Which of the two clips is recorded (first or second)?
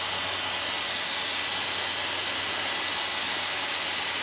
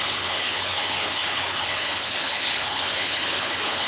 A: first